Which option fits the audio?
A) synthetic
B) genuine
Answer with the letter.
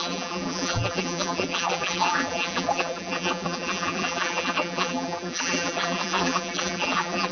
A